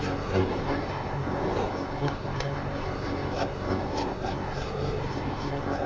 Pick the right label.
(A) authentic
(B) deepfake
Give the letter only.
B